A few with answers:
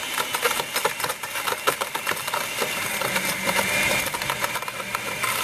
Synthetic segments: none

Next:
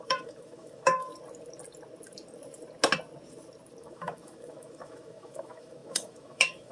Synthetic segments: 0.0-1.1 (autoencoder, DAC-VAE); 3.8-6.7

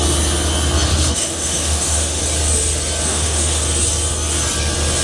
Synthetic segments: 0.9-2.2 (autoencoder, DAC-VAE); 3.1-3.6

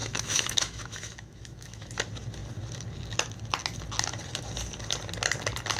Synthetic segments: 0.0-1.9 (autoencoder, DAC-VAE)

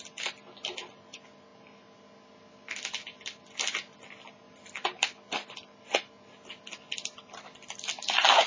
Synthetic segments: none